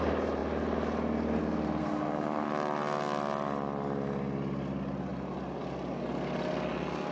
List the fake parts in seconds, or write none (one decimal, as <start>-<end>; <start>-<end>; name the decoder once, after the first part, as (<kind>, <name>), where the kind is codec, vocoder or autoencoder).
1.8-2.5 (codec, SNAC)